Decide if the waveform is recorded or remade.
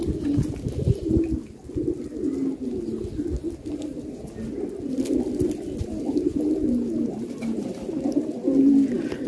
recorded